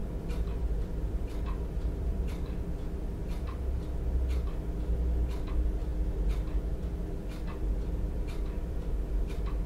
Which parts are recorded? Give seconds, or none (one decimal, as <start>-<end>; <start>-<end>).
0.0-0.7; 3.2-5.5